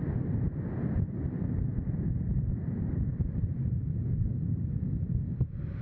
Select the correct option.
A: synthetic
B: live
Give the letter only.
B